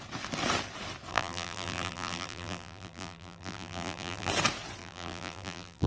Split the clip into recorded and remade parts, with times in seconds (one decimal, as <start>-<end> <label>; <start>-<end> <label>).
0.0-1.1 recorded; 1.1-4.3 remade; 4.3-4.8 recorded; 4.8-5.9 remade